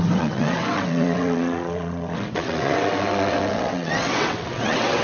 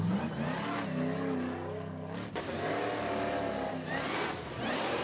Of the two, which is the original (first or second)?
second